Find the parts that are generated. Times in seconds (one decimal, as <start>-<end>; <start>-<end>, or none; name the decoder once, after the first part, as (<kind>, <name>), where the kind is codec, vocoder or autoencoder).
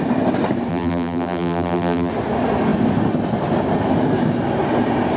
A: 0.7-2.1 (vocoder, BigVGAN v2)